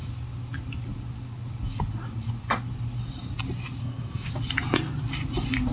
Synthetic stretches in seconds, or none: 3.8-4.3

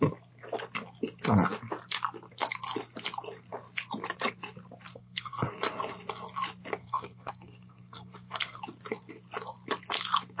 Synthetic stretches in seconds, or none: 4.9-5.5; 6.8-8.6